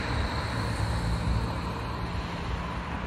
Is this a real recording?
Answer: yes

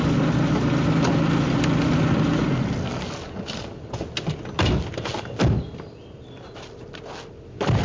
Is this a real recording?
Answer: yes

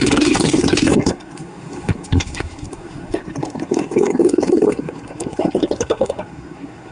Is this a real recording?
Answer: no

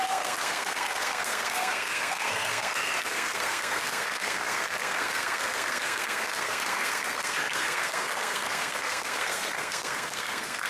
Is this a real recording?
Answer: no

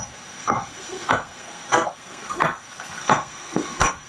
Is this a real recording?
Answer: no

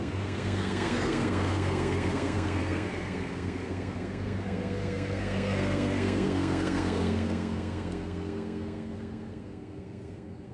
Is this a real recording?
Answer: no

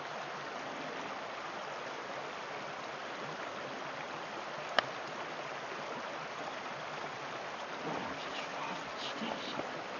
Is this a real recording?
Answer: yes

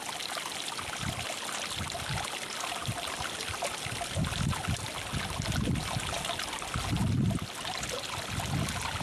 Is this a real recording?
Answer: yes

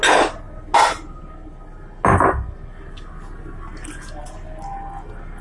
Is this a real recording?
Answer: yes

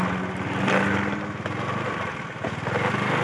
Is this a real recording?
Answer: yes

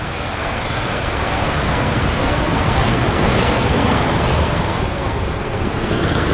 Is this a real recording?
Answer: no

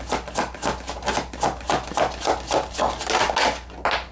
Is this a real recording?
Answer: yes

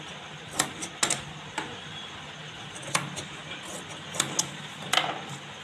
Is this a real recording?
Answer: yes